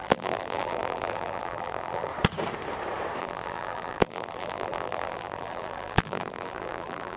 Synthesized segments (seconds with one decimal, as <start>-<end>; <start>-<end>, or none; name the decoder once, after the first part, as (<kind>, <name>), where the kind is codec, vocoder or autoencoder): 0.0-2.1 (vocoder, BigVGAN v2); 3.2-7.2